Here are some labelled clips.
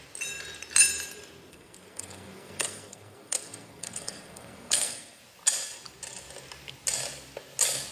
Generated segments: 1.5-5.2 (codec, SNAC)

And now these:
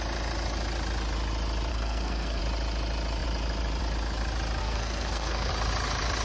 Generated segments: 1.7-2.4 (codec, SNAC); 4.6-5.5

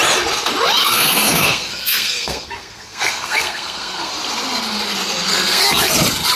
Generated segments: 0.8-4.1 (codec, SNAC); 5.3-5.9

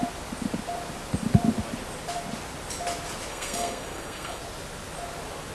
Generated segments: 3.3-4.4 (codec, SNAC)

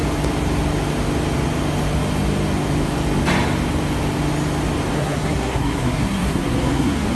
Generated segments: 4.9-7.1 (codec, SNAC)